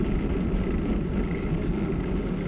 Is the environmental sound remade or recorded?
recorded